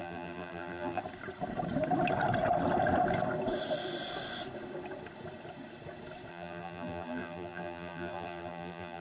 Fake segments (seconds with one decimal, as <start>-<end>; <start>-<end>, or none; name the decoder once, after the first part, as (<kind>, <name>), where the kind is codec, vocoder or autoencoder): 0.0-1.0 (vocoder, BigVGAN v2); 6.3-9.0